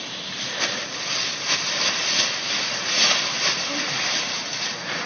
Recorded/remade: recorded